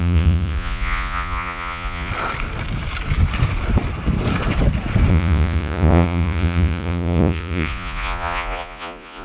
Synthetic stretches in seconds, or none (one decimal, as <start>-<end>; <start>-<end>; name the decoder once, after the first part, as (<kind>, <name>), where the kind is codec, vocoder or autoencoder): 0.0-2.1 (vocoder, Vocos); 5.1-9.2